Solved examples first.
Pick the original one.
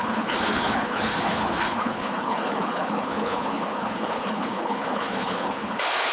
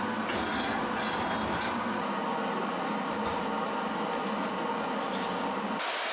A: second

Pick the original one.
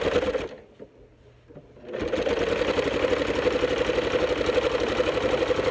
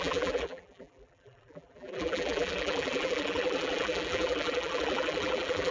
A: first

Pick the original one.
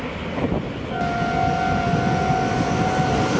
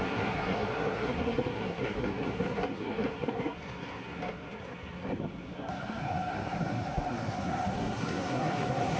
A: first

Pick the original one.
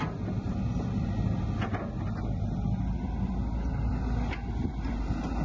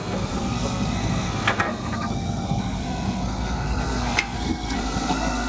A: first